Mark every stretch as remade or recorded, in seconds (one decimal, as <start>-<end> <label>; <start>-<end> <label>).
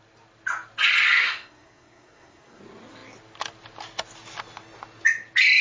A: 0.0-1.2 recorded; 1.2-2.6 remade; 2.6-5.6 recorded